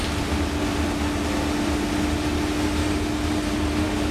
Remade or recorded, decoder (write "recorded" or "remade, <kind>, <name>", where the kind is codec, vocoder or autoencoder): recorded